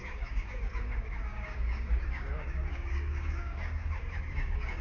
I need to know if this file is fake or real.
fake